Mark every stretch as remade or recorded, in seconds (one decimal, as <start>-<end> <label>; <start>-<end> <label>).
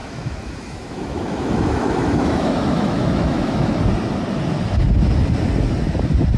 0.0-3.8 remade; 3.8-6.4 recorded